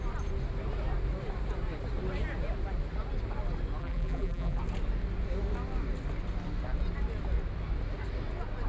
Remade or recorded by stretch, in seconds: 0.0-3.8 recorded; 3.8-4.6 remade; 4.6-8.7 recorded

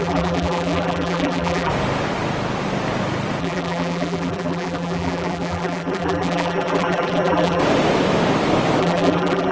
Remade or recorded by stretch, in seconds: 0.0-1.7 remade; 1.7-3.4 recorded; 3.4-7.6 remade; 7.6-8.8 recorded; 8.8-9.5 remade

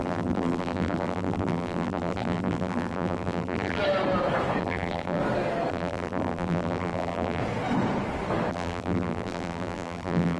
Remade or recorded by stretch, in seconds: 0.0-3.8 remade; 3.8-4.6 recorded; 4.6-5.2 remade; 5.2-5.7 recorded; 5.7-7.4 remade; 7.4-8.5 recorded; 8.5-10.4 remade

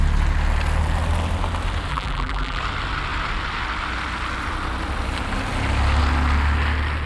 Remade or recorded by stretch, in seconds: 0.0-1.9 recorded; 1.9-2.6 remade; 2.6-7.1 recorded

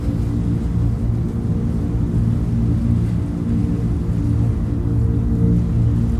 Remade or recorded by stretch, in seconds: 0.0-6.2 recorded

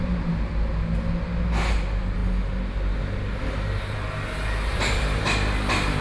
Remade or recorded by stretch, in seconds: 0.0-4.7 recorded; 4.7-5.2 remade; 5.2-6.0 recorded

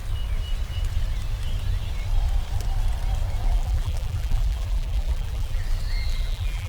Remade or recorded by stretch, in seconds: 0.0-3.4 recorded; 3.4-5.6 remade; 5.6-6.1 recorded; 6.1-6.7 remade

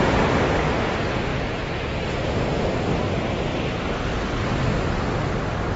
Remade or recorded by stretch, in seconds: 0.0-5.8 recorded